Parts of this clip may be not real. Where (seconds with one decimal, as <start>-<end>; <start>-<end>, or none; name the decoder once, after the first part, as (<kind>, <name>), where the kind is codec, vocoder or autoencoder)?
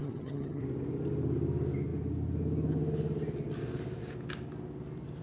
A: 0.0-0.6 (vocoder, HiFi-GAN)